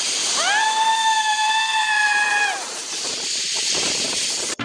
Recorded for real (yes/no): no